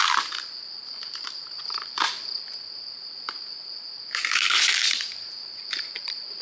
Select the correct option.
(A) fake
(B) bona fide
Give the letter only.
A